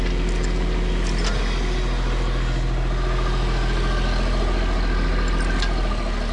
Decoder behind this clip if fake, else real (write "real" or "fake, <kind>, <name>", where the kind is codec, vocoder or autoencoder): real